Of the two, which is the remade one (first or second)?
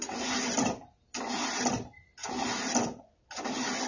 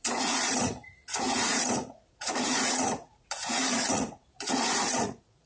second